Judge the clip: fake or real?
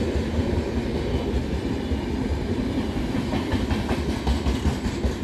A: real